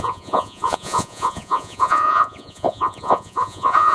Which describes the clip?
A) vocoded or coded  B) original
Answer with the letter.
A